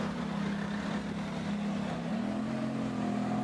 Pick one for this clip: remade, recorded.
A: recorded